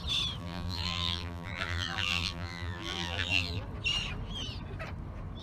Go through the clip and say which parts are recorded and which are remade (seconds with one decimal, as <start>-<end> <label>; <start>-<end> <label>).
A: 0.0-0.4 recorded; 0.4-3.6 remade; 3.6-5.4 recorded